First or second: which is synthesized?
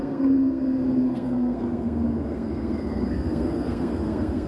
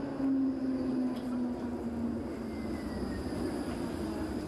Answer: first